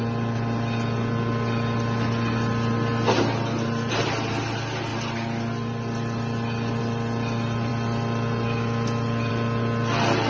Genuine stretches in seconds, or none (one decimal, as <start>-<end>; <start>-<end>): 0.0-10.3